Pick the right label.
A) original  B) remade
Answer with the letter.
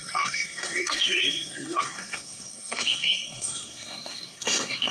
B